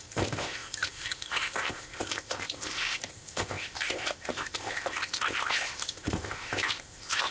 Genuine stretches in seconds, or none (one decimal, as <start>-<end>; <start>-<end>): none